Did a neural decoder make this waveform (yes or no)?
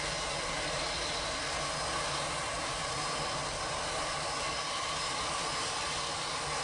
no